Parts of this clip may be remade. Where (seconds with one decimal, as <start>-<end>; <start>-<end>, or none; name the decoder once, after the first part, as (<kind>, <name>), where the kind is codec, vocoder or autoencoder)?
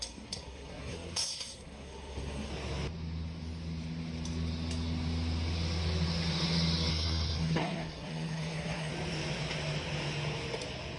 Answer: 0.0-2.5 (codec, SNAC); 6.9-8.9